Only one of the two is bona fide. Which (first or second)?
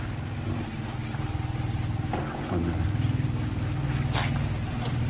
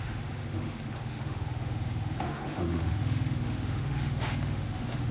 first